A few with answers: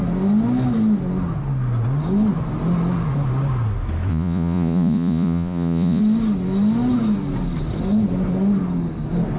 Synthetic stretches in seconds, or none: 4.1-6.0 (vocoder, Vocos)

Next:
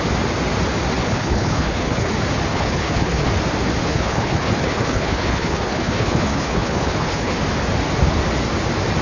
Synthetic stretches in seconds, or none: 1.0-2.1 (codec, HILCodec); 2.5-3.3; 3.8-7.4

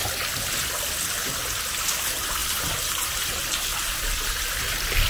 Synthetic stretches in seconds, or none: 2.0-3.7 (vocoder, BigVGAN v2); 4.6-5.1

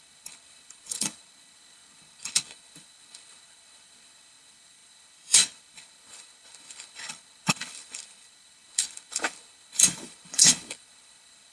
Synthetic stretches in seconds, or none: 0.0-11.5 (codec, HILCodec)

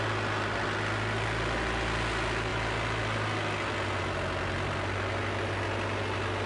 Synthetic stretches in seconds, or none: none